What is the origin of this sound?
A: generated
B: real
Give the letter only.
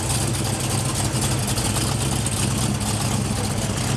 B